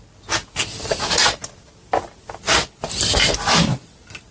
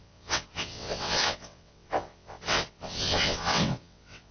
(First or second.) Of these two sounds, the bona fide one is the first